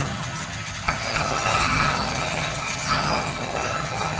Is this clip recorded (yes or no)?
no